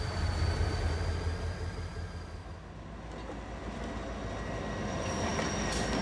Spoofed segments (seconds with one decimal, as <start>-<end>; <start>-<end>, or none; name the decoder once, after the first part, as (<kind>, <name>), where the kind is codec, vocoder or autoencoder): none